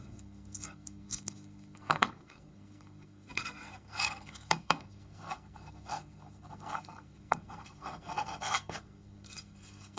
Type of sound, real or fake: fake